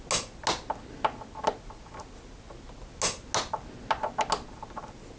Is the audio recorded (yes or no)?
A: yes